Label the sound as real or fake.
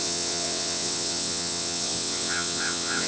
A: fake